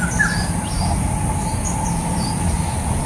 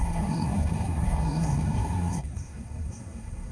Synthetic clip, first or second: second